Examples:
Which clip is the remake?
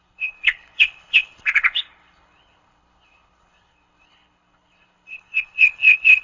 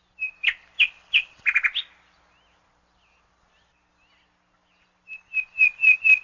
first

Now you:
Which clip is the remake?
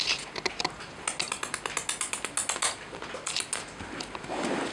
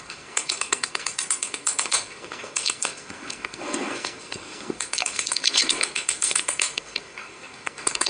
second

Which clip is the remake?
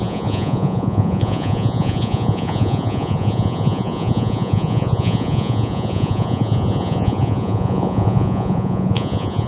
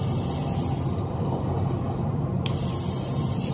first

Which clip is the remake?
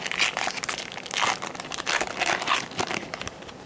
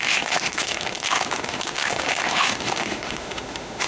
second